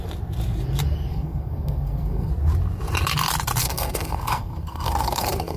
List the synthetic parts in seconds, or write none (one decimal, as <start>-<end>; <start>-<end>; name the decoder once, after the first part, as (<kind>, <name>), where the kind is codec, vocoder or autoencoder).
1.1-2.3 (codec, SNAC); 3.6-5.6